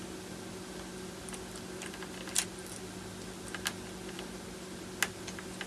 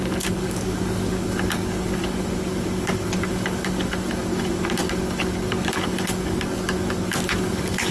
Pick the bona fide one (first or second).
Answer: first